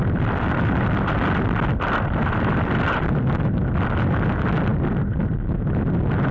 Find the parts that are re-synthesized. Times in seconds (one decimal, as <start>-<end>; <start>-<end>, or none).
0.0-3.8